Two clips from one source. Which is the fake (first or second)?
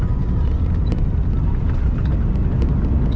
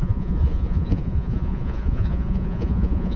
second